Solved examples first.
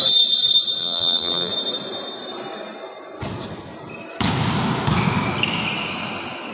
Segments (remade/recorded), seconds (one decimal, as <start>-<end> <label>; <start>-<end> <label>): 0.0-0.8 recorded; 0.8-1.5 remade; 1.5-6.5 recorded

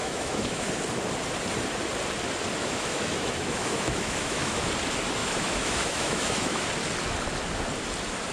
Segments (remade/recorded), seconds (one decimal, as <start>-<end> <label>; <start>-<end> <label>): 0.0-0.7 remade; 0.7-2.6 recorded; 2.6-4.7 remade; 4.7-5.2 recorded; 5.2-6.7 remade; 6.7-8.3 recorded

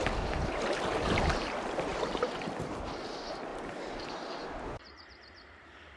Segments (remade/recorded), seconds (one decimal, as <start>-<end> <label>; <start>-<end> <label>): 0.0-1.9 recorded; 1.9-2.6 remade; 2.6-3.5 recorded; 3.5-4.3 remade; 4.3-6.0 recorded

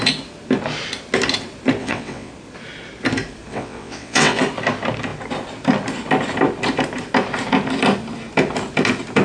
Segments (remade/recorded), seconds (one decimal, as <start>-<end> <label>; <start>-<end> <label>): 0.0-1.8 recorded; 1.8-2.3 remade; 2.3-3.5 recorded; 3.5-4.4 remade; 4.4-9.2 recorded